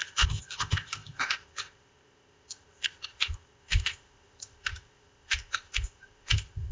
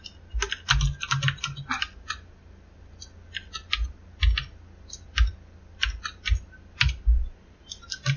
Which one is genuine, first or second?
second